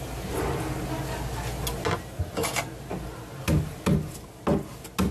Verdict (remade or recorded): recorded